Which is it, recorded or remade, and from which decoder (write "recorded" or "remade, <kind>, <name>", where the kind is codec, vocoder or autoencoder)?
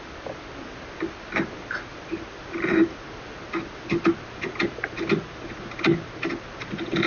recorded